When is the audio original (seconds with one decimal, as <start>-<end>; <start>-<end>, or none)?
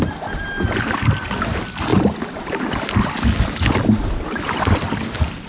0.0-5.5